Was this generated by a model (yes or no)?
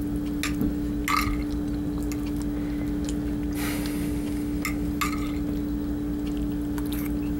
no